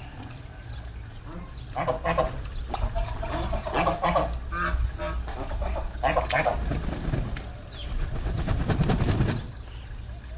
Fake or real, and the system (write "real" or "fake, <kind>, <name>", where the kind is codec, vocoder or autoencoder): real